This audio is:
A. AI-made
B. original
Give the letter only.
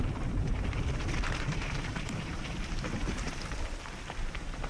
A